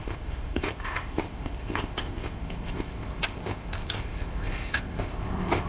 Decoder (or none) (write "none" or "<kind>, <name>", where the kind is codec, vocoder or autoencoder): codec, ZipCodec